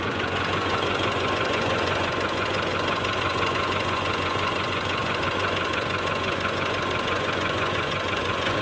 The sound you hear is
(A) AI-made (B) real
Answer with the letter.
A